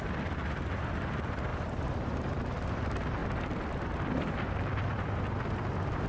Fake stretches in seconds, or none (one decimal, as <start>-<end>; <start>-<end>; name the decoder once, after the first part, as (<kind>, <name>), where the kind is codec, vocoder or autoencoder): 1.5-2.7 (vocoder, BigVGAN v2); 3.2-5.2